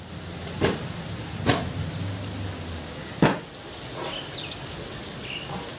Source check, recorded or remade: recorded